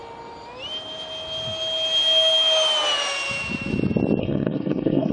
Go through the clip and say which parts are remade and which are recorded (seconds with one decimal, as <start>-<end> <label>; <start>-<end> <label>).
0.0-4.2 recorded; 4.2-5.1 remade